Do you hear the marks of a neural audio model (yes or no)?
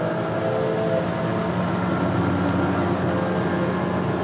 no